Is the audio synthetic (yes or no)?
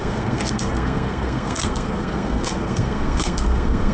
yes